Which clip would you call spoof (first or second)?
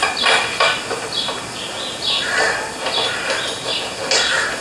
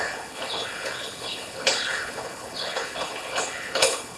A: second